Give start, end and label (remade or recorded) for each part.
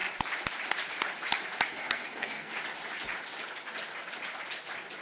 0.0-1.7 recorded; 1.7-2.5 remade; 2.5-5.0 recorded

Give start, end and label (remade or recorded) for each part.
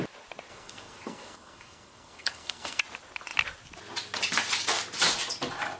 0.0-0.5 recorded; 0.5-2.8 remade; 2.8-5.8 recorded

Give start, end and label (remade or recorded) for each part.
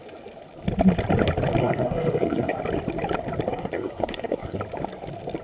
0.0-1.6 recorded; 1.6-2.6 remade; 2.6-3.5 recorded; 3.5-4.6 remade; 4.6-5.4 recorded